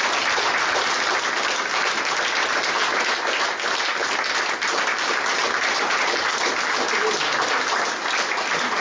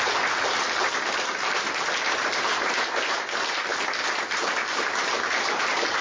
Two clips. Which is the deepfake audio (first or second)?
second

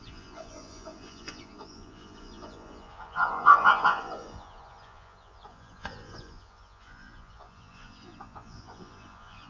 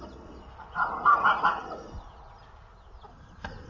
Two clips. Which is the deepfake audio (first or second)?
first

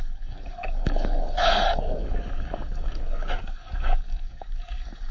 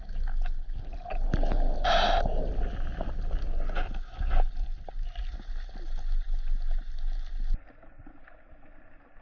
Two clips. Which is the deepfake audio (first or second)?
first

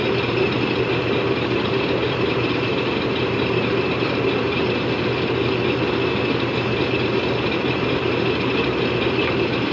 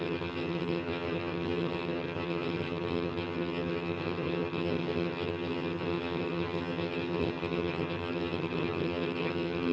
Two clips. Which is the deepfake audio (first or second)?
second